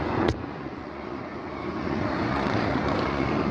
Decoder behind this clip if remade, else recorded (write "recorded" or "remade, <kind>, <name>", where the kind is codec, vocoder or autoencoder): remade, vocoder, Vocos